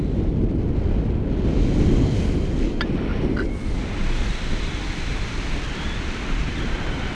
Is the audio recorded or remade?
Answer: recorded